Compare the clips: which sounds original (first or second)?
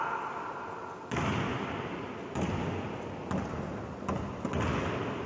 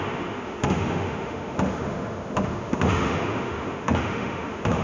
first